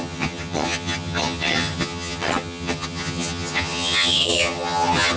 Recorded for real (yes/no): no